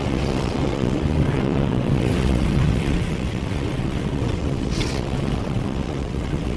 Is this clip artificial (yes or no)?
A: yes